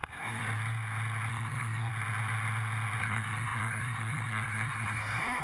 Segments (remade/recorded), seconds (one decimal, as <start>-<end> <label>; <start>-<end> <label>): 0.0-0.4 remade; 0.4-1.3 recorded; 1.3-1.9 remade; 1.9-3.0 recorded; 3.0-5.4 remade